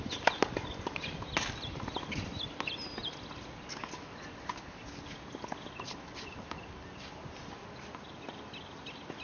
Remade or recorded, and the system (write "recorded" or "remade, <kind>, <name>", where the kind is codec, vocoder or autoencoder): recorded